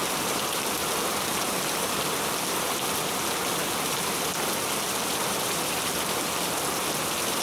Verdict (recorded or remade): remade